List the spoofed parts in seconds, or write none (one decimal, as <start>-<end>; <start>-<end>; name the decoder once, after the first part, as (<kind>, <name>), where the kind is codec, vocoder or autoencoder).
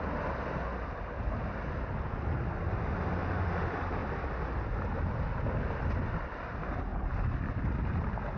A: none